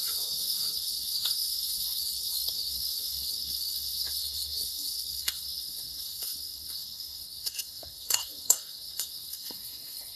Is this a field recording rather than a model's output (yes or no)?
no